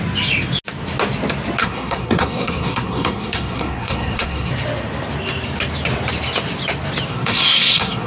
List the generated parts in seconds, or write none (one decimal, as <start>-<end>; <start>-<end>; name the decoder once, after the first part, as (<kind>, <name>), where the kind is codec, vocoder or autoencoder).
1.6-4.5 (codec, SNAC); 7.1-8.1